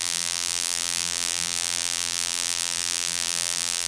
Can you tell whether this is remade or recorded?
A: remade